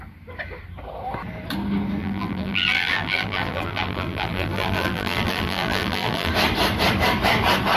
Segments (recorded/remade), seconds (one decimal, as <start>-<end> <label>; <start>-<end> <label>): 0.0-2.0 recorded; 2.0-6.3 remade; 6.3-7.8 recorded